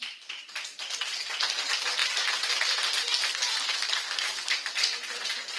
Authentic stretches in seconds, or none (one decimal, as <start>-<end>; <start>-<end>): 0.0-5.6